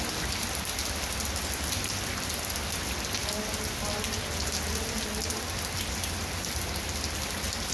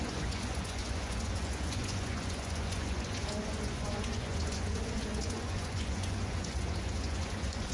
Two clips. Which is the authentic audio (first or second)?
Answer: first